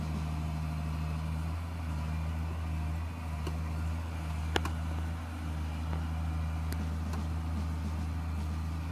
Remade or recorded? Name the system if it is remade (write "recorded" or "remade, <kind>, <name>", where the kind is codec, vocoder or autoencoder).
recorded